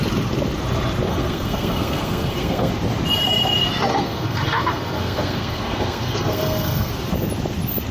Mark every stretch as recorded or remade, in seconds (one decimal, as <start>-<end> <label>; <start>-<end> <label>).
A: 0.0-1.1 recorded; 1.1-2.7 remade; 2.7-3.9 recorded; 3.9-6.9 remade; 6.9-7.9 recorded